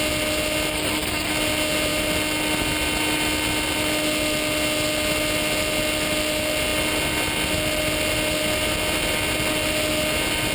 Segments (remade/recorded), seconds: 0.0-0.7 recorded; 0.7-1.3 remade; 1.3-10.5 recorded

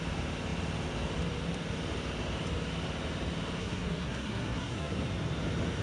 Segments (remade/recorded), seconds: 0.0-3.6 recorded; 3.6-5.0 remade; 5.0-5.8 recorded

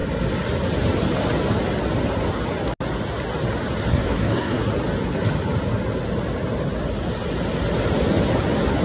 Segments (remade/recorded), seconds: 0.0-3.9 recorded; 3.9-4.6 remade; 4.6-8.8 recorded